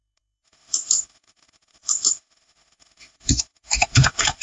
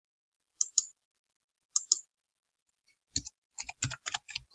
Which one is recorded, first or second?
second